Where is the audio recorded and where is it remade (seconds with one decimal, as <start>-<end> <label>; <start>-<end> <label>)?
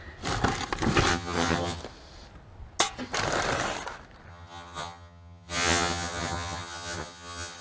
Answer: 0.0-1.1 recorded; 1.1-1.8 remade; 1.8-4.3 recorded; 4.3-7.6 remade